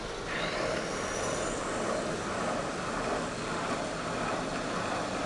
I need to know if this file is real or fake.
fake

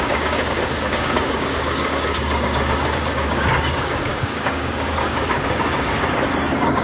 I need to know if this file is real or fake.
fake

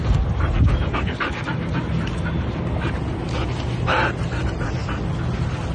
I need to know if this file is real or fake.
real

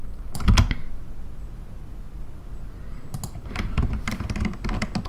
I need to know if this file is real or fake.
real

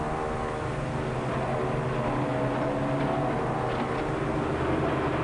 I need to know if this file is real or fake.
real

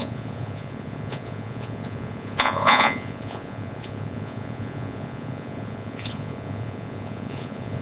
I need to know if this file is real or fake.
fake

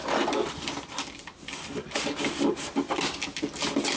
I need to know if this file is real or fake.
real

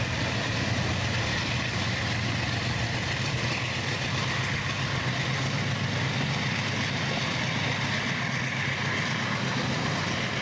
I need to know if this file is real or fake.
real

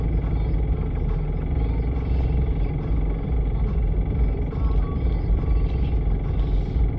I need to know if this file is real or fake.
real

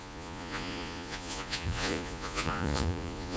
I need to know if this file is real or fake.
fake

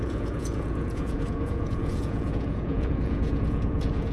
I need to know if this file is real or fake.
fake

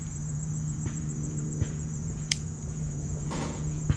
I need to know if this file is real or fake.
fake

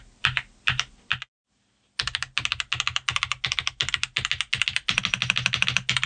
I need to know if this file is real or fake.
real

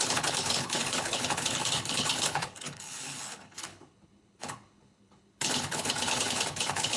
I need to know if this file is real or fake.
fake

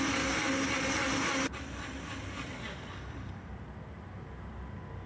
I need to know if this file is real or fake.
real